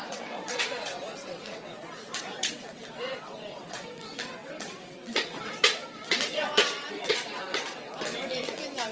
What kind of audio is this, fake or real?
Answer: fake